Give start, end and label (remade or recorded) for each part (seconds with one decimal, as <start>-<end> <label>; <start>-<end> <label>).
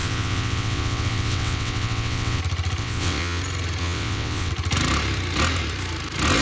0.0-2.4 remade; 2.4-2.8 recorded; 2.8-3.4 remade; 3.4-3.8 recorded; 3.8-4.5 remade; 4.5-6.4 recorded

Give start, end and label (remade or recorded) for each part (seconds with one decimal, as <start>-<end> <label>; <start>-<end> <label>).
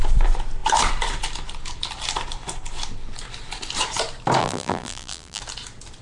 0.0-4.4 recorded; 4.4-5.4 remade; 5.4-6.0 recorded